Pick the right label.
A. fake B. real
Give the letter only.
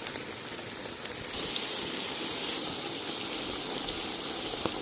B